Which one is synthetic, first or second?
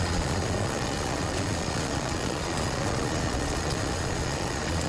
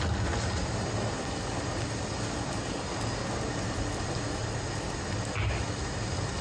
first